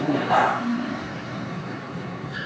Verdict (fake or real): fake